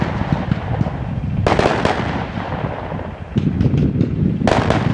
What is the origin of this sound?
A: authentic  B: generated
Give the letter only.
A